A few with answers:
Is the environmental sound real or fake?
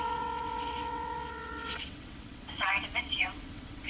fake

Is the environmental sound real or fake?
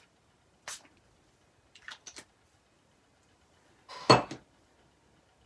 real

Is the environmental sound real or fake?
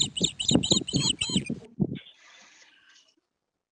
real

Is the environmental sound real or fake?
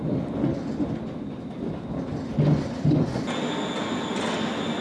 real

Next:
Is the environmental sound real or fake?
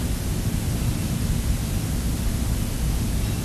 real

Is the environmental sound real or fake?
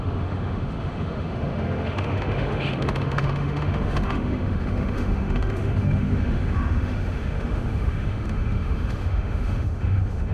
fake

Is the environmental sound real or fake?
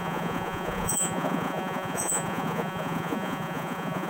fake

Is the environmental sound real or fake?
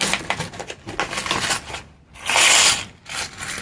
real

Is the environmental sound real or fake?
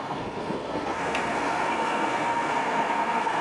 fake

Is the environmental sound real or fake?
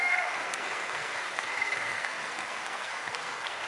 fake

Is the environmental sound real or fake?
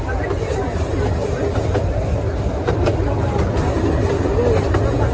real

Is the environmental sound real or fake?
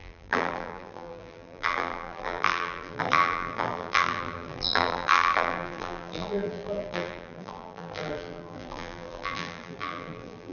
fake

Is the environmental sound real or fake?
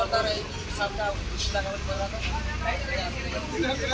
real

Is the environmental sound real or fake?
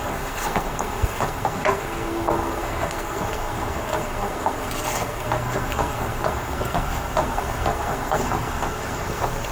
fake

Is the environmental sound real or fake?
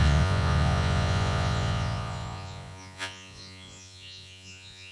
fake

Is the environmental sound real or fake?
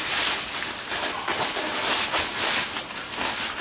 real